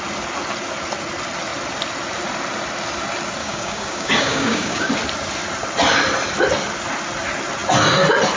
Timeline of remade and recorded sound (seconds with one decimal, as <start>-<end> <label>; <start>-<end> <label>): 0.0-3.4 recorded; 3.4-4.9 remade; 4.9-8.4 recorded